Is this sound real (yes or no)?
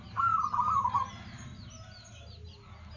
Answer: yes